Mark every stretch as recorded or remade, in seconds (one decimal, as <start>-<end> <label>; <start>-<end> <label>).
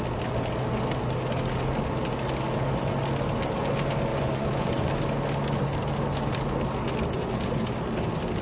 0.0-4.1 recorded; 4.1-4.9 remade; 4.9-8.4 recorded